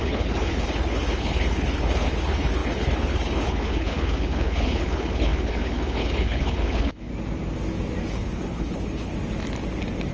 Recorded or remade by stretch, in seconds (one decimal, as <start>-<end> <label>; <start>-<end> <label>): 0.0-7.1 remade; 7.1-8.1 recorded; 8.1-9.1 remade; 9.1-10.1 recorded